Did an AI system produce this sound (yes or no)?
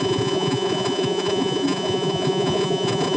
yes